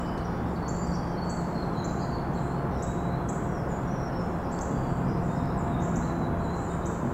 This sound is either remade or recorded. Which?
recorded